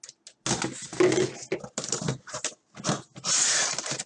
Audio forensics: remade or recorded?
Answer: recorded